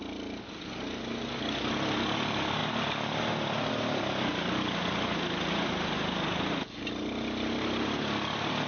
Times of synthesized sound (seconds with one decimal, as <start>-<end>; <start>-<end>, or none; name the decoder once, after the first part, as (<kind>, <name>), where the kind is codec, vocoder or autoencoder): none

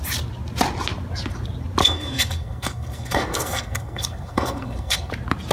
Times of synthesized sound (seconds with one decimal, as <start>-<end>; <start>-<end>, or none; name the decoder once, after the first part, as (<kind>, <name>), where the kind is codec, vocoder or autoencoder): 1.8-5.1 (codec, SNAC)

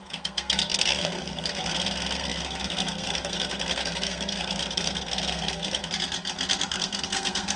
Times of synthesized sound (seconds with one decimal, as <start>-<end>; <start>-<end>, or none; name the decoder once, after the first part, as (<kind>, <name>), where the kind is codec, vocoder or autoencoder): 0.0-5.8 (codec, SNAC); 6.5-7.6